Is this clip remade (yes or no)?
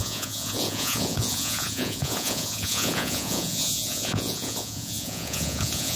yes